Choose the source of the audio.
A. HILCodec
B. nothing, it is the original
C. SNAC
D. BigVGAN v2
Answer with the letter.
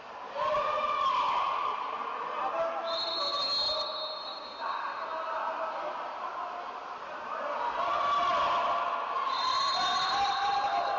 B